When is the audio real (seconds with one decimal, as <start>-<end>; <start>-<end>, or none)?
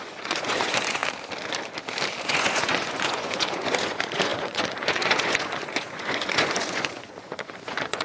1.0-2.2